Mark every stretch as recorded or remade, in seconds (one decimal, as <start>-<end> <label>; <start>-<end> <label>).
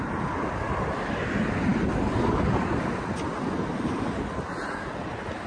0.0-5.5 recorded